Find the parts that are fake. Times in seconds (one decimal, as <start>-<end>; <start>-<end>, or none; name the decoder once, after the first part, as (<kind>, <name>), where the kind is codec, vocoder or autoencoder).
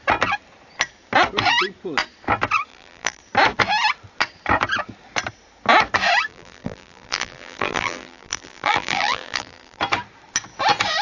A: 2.7-3.2 (vocoder, BigVGAN v2); 6.3-9.8